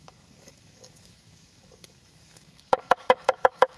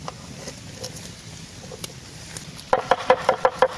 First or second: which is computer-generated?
first